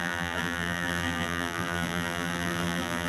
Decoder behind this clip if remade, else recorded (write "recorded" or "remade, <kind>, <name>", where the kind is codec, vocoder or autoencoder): remade, vocoder, BigVGAN v2